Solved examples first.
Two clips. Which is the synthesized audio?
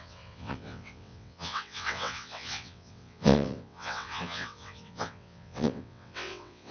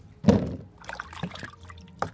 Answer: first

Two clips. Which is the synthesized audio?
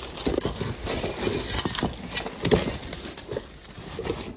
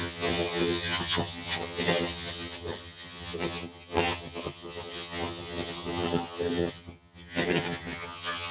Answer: second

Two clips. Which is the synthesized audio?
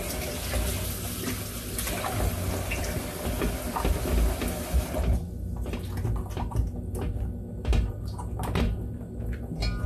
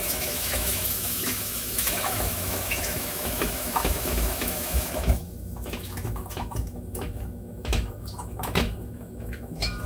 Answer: second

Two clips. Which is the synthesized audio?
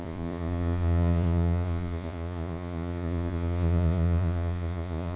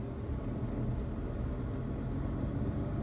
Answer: first